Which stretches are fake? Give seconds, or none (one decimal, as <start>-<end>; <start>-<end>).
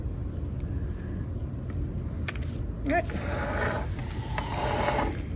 none